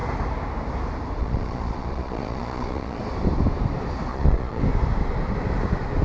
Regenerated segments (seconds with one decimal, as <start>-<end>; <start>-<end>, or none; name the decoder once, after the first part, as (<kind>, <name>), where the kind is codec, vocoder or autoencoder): 1.2-3.0 (vocoder, Vocos); 4.1-4.6